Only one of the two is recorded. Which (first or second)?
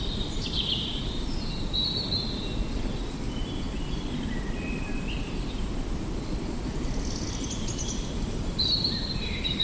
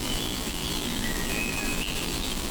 first